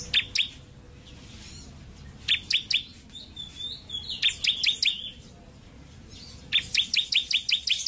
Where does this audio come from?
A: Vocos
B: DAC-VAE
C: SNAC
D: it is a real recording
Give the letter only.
D